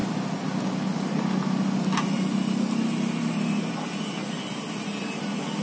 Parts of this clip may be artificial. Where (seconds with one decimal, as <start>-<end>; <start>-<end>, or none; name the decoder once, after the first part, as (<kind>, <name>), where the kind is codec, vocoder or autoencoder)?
none